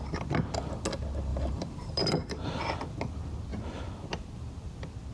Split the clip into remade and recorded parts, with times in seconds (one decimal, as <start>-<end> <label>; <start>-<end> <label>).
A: 0.0-1.3 recorded; 1.3-2.1 remade; 2.1-5.1 recorded